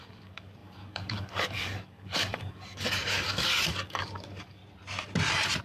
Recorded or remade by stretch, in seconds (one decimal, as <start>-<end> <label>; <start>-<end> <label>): 0.0-4.6 remade; 4.6-5.6 recorded